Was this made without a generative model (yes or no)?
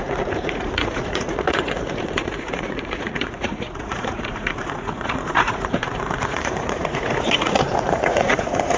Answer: no